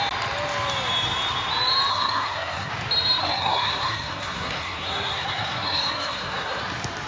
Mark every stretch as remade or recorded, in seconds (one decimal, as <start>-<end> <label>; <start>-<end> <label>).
0.0-1.9 recorded; 1.9-2.7 remade; 2.7-3.2 recorded; 3.2-6.6 remade; 6.6-7.1 recorded